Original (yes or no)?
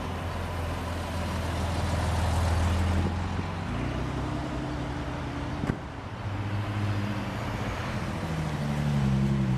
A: yes